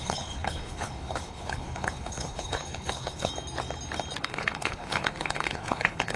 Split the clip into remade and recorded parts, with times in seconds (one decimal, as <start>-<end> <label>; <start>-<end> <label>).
0.0-3.3 remade; 3.3-4.2 recorded; 4.2-6.2 remade